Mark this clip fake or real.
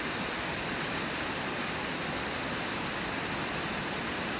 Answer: real